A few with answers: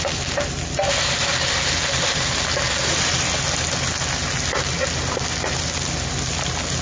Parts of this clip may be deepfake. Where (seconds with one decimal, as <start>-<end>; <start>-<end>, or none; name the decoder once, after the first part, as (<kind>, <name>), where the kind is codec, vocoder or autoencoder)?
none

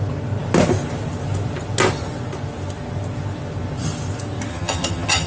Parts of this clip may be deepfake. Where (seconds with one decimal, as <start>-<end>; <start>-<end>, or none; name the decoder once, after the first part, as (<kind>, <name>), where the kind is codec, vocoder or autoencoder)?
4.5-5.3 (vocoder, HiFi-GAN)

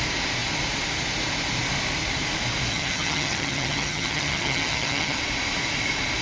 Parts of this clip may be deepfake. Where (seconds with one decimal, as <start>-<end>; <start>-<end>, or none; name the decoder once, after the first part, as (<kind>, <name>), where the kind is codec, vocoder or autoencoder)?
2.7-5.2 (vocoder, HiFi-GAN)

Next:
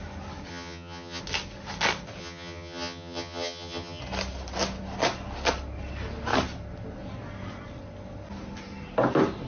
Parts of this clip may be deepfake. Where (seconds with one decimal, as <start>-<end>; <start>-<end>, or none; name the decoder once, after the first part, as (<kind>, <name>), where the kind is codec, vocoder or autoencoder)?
0.5-1.2 (vocoder, HiFi-GAN); 2.2-4.0